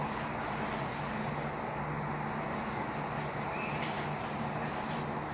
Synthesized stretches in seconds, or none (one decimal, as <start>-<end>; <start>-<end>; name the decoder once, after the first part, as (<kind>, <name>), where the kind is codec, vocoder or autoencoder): none